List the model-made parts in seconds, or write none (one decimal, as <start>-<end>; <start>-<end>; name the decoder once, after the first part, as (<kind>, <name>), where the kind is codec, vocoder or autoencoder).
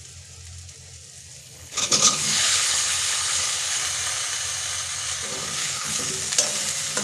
1.4-3.8 (codec, HILCodec); 5.6-6.1